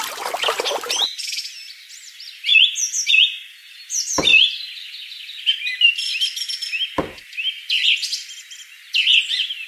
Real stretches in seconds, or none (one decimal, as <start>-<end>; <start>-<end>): 0.0-9.7